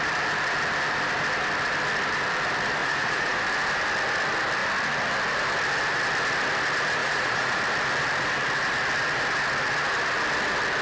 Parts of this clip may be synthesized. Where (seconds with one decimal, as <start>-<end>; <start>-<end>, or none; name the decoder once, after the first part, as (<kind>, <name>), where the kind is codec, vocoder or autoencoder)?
2.8-3.4 (vocoder, Vocos); 7.0-7.6